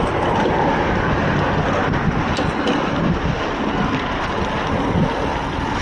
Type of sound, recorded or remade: recorded